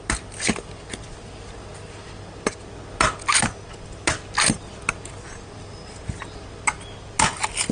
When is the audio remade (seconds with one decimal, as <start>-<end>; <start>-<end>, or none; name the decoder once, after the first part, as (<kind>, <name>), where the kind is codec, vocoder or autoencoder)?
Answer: none